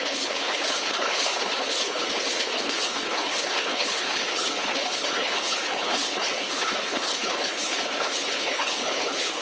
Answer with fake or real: fake